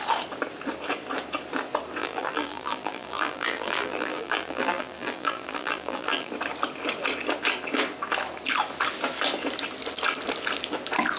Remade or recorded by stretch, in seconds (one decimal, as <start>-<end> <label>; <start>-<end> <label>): 0.0-2.0 recorded; 2.0-6.3 remade; 6.3-11.2 recorded

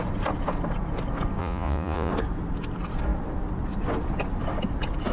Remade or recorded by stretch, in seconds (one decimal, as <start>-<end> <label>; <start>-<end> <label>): 0.0-1.4 recorded; 1.4-2.1 remade; 2.1-5.1 recorded

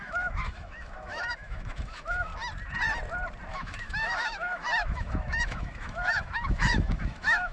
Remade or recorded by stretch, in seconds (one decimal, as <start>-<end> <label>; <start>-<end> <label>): 0.0-2.3 remade; 2.3-3.5 recorded; 3.5-7.5 remade